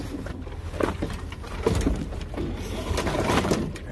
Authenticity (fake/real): fake